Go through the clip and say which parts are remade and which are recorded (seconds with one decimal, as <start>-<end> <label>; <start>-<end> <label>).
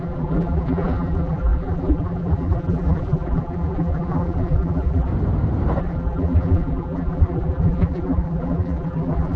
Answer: 0.0-5.1 remade; 5.1-5.8 recorded; 5.8-9.4 remade